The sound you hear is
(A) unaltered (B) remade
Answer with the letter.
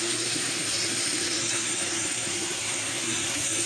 B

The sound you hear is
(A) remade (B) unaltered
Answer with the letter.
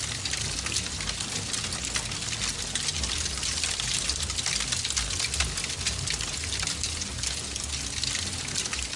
B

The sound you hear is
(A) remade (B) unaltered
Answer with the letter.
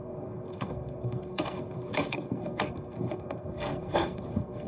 A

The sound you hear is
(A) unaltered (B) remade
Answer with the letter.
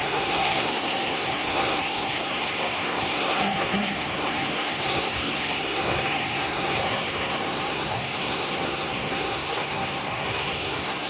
B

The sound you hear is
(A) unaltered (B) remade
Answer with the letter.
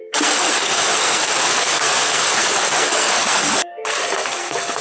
B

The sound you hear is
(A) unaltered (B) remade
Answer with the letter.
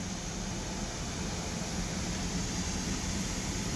A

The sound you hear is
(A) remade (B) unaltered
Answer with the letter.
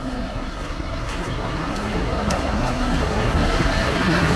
A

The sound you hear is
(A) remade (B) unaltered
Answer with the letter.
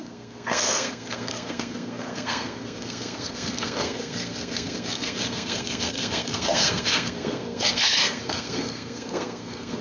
A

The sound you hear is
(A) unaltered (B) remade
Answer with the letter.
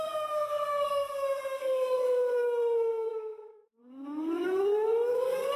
B